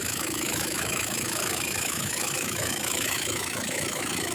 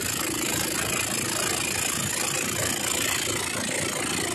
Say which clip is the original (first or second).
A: second